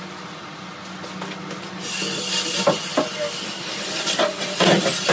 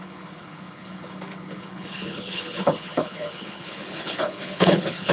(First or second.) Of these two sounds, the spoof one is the second